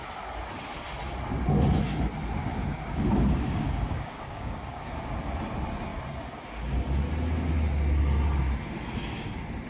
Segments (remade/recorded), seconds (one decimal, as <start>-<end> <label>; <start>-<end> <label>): 0.0-2.5 recorded; 2.5-5.1 remade; 5.1-9.7 recorded